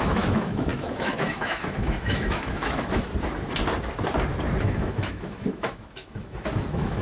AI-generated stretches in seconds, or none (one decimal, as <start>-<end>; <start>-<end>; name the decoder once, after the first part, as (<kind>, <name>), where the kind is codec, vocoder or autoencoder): 0.0-3.1 (autoencoder, DAC-VAE); 4.6-7.0